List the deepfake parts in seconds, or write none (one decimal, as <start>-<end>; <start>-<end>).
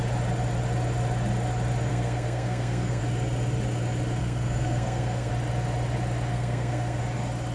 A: 1.9-3.0; 4.2-5.3; 6.3-7.0